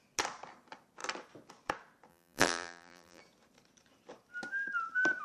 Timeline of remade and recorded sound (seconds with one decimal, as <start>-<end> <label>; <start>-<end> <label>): 0.0-2.1 recorded; 2.1-3.2 remade; 3.2-5.2 recorded